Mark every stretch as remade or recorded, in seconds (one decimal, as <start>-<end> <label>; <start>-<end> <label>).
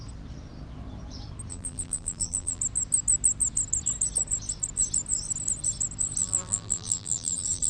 0.0-1.5 recorded; 1.5-2.6 remade; 2.6-6.2 recorded; 6.2-7.7 remade